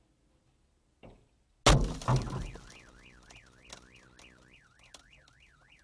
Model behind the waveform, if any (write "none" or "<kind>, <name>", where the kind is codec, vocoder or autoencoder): none